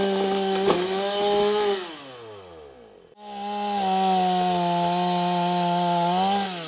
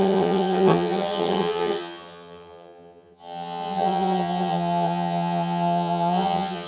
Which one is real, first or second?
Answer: first